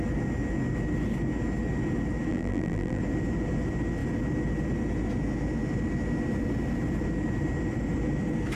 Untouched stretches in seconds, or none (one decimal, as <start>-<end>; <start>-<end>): 0.0-2.3; 3.0-8.6